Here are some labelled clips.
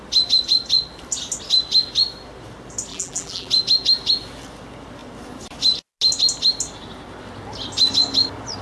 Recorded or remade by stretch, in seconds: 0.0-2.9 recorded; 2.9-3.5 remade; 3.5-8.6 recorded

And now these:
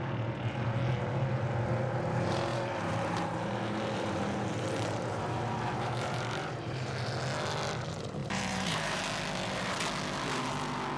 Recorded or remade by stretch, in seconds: 0.0-2.5 recorded; 2.5-6.9 remade; 6.9-8.2 recorded; 8.2-9.0 remade; 9.0-11.0 recorded

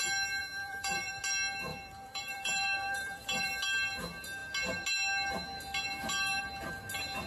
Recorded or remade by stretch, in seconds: 0.0-0.4 recorded; 0.4-1.2 remade; 1.2-1.7 recorded; 1.7-3.5 remade; 3.5-7.3 recorded

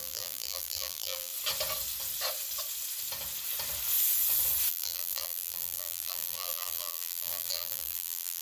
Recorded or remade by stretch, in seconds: 0.0-1.3 remade; 1.3-4.7 recorded; 4.7-8.4 remade

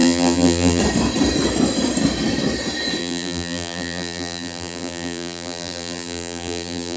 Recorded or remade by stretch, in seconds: 0.0-0.8 remade; 0.8-3.0 recorded; 3.0-7.0 remade